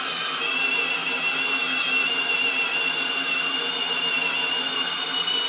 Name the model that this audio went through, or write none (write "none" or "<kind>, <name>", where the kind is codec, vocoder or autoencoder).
none